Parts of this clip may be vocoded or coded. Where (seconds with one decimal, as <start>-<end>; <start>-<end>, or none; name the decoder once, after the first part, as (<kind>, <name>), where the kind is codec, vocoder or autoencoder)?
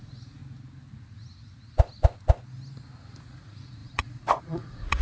0.0-0.4 (vocoder, Vocos); 3.2-5.0